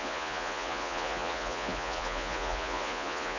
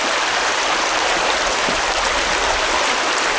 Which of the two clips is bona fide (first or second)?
second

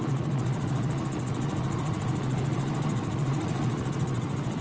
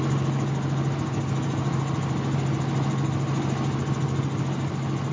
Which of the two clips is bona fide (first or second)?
second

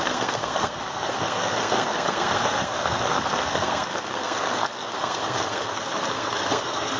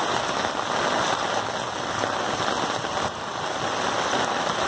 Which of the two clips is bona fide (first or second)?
second